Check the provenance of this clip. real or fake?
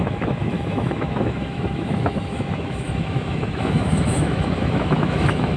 fake